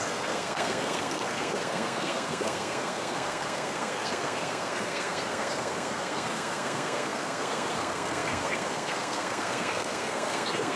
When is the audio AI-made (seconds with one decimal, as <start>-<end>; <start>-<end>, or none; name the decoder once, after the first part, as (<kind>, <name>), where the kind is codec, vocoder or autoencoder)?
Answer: 0.0-10.8 (codec, SNAC)